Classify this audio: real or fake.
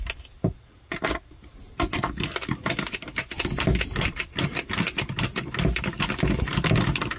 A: real